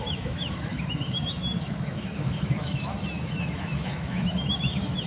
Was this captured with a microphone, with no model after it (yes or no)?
no